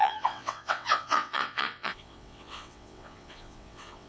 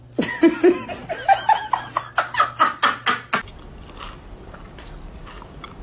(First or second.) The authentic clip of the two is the second